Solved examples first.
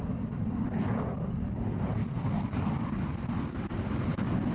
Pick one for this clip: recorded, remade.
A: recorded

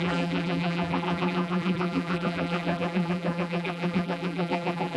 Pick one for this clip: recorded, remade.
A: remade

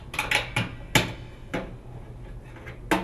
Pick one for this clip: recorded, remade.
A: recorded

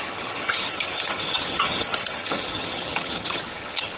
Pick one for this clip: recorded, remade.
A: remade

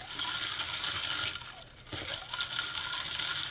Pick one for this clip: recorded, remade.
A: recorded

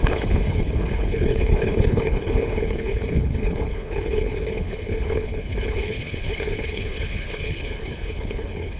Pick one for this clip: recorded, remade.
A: remade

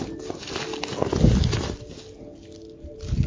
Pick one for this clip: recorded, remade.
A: recorded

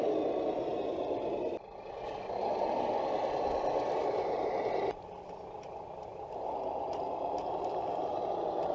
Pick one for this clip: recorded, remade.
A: recorded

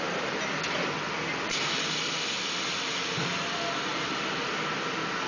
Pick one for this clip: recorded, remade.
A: recorded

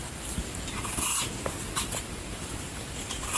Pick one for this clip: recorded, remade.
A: recorded